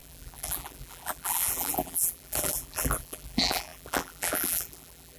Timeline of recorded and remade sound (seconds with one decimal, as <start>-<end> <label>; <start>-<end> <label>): 0.0-5.2 remade